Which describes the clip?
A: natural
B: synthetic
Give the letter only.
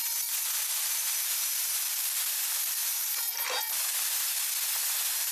A